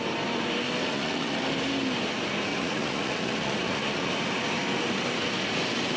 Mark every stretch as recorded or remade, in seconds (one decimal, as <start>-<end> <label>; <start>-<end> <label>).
0.0-0.8 recorded; 0.8-1.4 remade; 1.4-2.5 recorded; 2.5-4.1 remade; 4.1-6.0 recorded